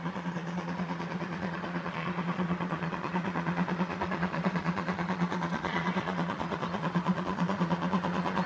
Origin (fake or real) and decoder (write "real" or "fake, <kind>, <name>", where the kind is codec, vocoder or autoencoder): fake, vocoder, Vocos